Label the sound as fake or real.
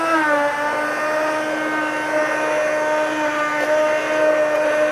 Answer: real